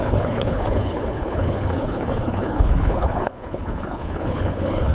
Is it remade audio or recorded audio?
remade